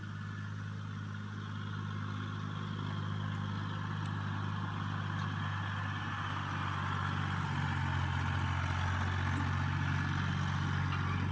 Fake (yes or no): no